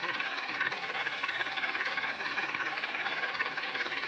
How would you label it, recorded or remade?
remade